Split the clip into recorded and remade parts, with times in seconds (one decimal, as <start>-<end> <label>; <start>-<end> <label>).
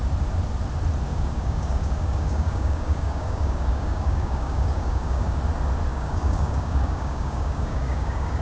0.0-1.1 recorded; 1.1-5.4 remade; 5.4-5.9 recorded; 5.9-8.4 remade